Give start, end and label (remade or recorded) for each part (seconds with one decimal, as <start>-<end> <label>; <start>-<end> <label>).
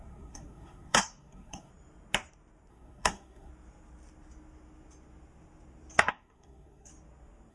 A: 0.0-1.7 remade; 1.7-2.7 recorded; 2.7-3.5 remade; 3.5-6.1 recorded; 6.1-6.9 remade; 6.9-7.5 recorded